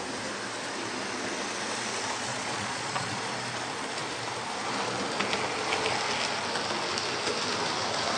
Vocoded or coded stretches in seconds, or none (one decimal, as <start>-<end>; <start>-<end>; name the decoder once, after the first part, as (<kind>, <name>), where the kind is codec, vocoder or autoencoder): 2.3-3.2 (vocoder, Vocos)